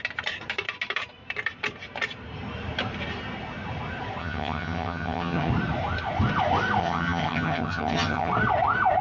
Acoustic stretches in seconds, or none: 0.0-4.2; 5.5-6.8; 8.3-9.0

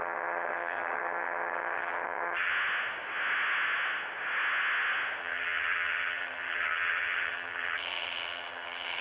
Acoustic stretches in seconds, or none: 2.5-5.2

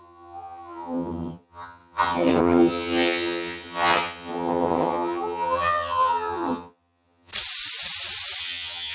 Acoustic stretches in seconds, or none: 7.3-8.4

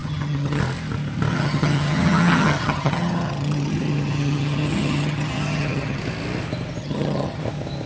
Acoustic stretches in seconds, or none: 0.6-1.3; 6.0-6.8; 7.4-7.9